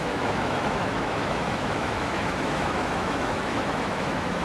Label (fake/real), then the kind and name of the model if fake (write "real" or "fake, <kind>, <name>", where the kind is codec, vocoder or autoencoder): fake, autoencoder, DAC-VAE